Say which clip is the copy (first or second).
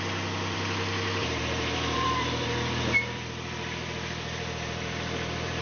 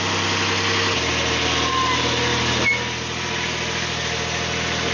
first